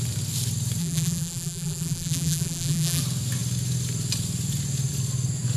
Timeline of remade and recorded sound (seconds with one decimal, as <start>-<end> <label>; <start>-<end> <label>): 0.0-0.8 recorded; 0.8-3.0 remade; 3.0-5.6 recorded